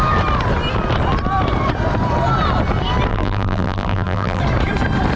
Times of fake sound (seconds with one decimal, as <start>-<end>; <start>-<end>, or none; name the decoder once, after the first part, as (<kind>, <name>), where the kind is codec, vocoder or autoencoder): 3.1-4.4 (vocoder, BigVGAN v2)